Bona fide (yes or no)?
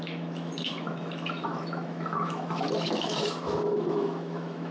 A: no